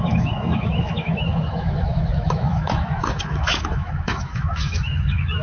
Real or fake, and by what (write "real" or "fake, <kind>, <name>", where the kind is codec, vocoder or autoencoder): fake, autoencoder, DAC-VAE